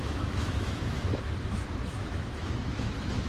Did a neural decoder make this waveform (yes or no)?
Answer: yes